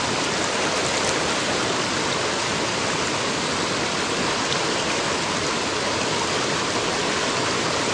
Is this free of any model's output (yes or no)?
yes